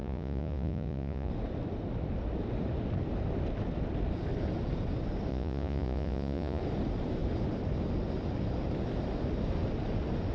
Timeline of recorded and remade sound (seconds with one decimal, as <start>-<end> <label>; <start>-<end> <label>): 0.0-1.3 remade; 1.3-5.3 recorded; 5.3-6.6 remade; 6.6-10.3 recorded